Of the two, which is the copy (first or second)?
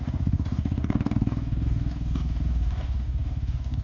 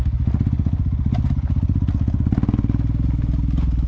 first